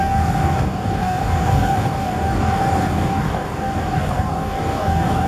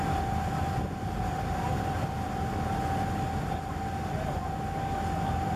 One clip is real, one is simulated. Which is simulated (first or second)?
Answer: first